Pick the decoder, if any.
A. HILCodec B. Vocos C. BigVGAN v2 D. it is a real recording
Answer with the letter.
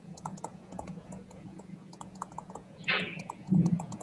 B